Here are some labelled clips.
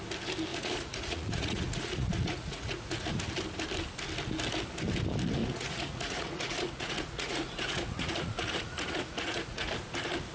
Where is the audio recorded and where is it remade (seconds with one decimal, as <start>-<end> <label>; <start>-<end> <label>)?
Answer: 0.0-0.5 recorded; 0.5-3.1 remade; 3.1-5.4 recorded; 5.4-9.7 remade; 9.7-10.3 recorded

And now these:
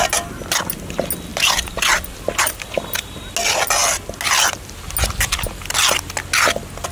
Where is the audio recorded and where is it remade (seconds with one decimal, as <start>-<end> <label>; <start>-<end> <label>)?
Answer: 0.0-1.3 recorded; 1.3-3.3 remade; 3.3-6.9 recorded

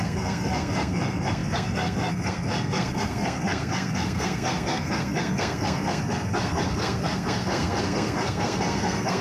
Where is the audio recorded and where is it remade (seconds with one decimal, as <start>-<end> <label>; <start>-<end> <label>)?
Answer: 0.0-9.2 remade

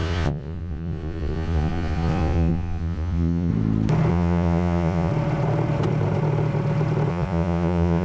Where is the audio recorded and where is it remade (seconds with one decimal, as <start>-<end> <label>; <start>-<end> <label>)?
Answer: 0.0-3.5 remade; 3.5-4.1 recorded; 4.1-5.1 remade; 5.1-7.1 recorded; 7.1-8.0 remade

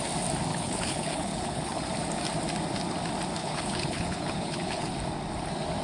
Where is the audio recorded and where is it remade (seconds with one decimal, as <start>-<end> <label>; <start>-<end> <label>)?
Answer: 0.0-0.5 recorded; 0.5-1.8 remade; 1.8-3.4 recorded; 3.4-4.9 remade; 4.9-5.8 recorded

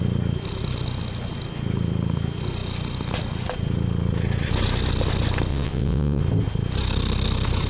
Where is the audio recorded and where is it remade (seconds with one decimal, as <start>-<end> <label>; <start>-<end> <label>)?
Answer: 0.0-5.5 recorded; 5.5-6.2 remade; 6.2-7.7 recorded

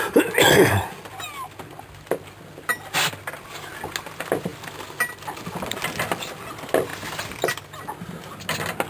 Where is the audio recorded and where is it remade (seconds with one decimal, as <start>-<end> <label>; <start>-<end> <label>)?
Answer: 0.0-8.9 recorded

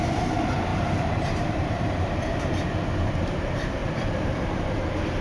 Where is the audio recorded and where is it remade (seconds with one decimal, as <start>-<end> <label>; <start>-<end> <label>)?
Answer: 0.0-0.7 recorded; 0.7-2.2 remade; 2.2-5.2 recorded